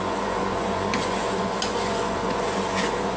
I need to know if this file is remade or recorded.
remade